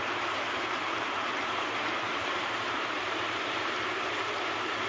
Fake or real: fake